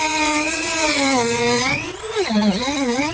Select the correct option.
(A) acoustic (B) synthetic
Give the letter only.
B